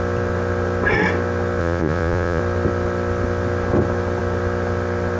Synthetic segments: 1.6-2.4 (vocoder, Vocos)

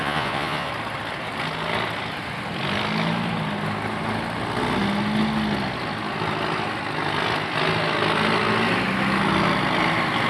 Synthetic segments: 0.0-0.7 (vocoder, Vocos)